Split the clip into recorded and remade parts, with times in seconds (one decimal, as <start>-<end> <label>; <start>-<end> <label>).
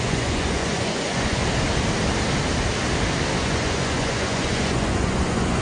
0.0-1.4 remade; 1.4-3.4 recorded; 3.4-5.6 remade